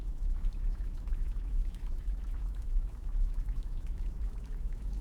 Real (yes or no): no